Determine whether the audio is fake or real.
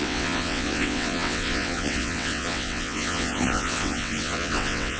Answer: fake